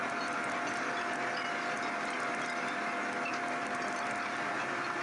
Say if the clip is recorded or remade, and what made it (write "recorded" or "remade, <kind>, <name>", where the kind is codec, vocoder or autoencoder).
recorded